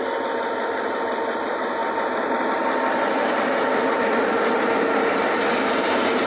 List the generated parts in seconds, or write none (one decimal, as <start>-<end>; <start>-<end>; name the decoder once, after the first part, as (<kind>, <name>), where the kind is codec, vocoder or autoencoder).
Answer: none